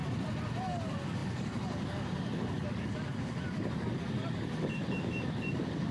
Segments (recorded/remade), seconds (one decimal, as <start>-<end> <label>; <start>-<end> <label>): 0.0-0.6 recorded; 0.6-5.9 remade